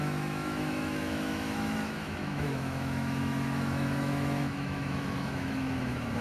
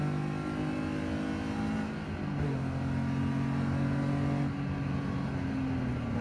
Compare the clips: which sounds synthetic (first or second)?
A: first